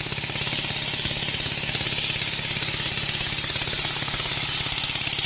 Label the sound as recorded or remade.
recorded